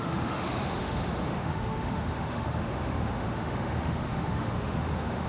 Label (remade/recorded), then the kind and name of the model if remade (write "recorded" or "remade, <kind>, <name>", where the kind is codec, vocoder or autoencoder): remade, autoencoder, DAC-VAE